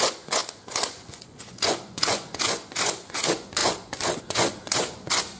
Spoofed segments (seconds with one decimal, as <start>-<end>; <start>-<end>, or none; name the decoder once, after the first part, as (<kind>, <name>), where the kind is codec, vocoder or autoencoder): 0.0-5.4 (vocoder, Vocos)

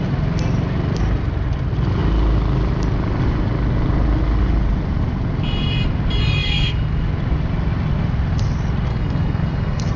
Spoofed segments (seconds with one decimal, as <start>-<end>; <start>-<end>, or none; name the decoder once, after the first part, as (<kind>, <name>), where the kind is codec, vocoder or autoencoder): 6.4-7.0 (codec, DAC); 8.9-10.0